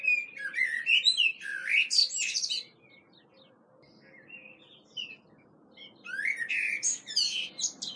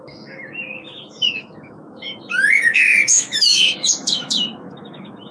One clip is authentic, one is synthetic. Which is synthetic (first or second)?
second